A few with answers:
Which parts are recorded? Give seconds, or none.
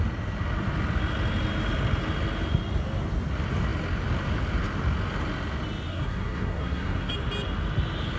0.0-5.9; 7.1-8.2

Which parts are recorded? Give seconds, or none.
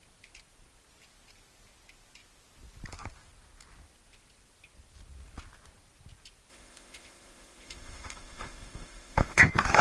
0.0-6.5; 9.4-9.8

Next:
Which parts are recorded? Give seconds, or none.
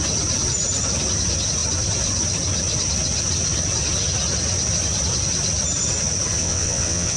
0.0-6.4